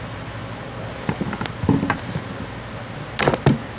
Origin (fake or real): real